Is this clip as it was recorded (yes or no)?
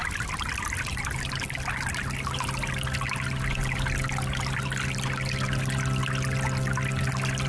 yes